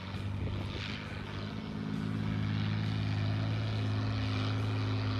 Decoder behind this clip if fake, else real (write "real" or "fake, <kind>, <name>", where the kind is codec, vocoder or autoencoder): real